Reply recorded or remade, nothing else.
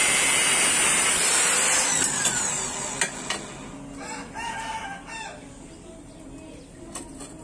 recorded